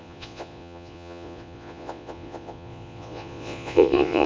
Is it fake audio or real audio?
fake